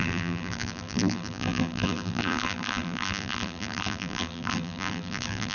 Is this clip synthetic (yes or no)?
yes